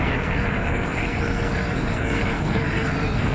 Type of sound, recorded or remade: remade